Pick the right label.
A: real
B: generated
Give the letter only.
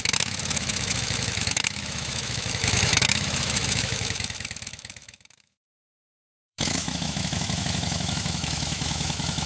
B